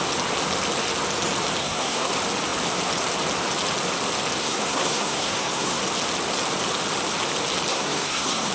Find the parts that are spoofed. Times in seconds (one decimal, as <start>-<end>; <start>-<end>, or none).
1.6-2.1; 4.4-5.8; 7.7-8.5